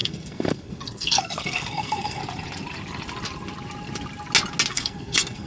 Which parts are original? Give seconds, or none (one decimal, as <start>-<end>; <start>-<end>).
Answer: 2.2-4.7